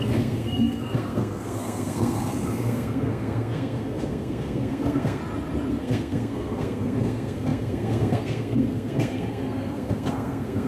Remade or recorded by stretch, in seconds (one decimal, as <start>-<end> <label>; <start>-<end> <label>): 0.0-5.2 remade; 5.2-5.7 recorded; 5.7-10.7 remade